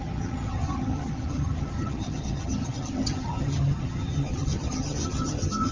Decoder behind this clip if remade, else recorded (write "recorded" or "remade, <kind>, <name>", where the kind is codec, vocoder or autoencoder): remade, vocoder, HiFi-GAN